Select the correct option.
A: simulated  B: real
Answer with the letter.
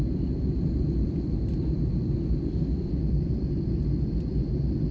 A